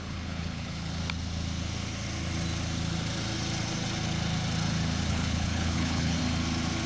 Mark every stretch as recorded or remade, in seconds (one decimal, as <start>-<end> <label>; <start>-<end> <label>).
0.0-1.0 remade; 1.0-5.1 recorded; 5.1-6.2 remade; 6.2-6.9 recorded